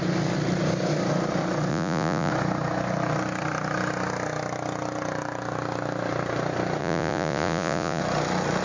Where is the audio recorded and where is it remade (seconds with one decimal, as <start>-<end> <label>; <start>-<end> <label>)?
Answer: 0.0-1.7 recorded; 1.7-2.3 remade; 2.3-6.8 recorded; 6.8-8.0 remade; 8.0-8.6 recorded